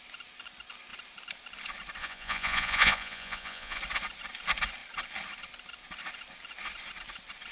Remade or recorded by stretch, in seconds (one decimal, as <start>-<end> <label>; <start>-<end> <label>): 0.0-2.0 recorded; 2.0-3.8 remade; 3.8-7.5 recorded